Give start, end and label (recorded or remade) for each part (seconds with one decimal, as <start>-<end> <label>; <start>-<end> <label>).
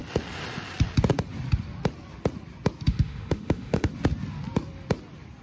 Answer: 0.0-2.9 recorded; 2.9-3.9 remade; 3.9-5.4 recorded